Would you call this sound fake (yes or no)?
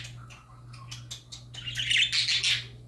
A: no